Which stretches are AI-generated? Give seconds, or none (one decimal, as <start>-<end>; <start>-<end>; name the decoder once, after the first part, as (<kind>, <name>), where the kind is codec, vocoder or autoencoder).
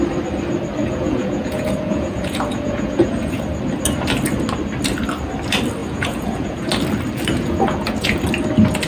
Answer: 0.8-3.4 (vocoder, Vocos); 5.8-6.7; 7.3-8.2